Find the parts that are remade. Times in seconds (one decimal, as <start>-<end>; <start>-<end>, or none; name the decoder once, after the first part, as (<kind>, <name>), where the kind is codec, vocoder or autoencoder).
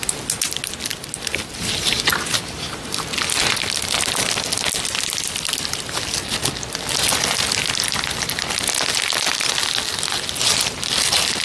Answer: none